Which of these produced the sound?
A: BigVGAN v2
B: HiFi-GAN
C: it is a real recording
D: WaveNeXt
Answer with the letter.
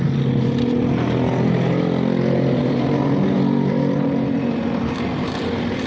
C